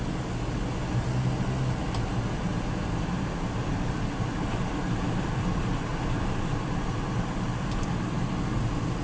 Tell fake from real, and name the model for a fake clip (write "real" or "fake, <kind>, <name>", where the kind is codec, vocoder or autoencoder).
real